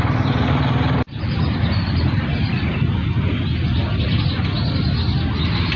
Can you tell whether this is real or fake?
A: real